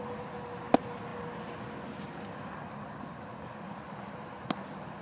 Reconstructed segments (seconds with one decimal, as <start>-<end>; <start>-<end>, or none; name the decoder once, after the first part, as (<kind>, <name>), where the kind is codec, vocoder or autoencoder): none